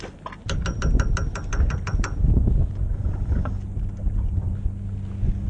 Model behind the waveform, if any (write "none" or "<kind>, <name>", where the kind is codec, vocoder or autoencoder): none